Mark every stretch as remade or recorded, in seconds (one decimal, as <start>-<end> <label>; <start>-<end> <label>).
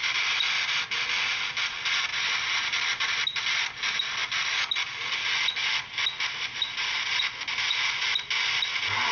0.0-9.1 recorded